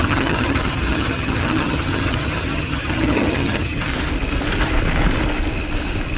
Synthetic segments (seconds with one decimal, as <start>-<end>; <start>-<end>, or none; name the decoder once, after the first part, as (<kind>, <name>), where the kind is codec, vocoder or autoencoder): 0.0-3.9 (vocoder, HiFi-GAN)